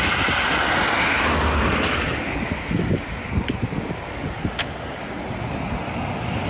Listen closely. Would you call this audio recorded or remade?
recorded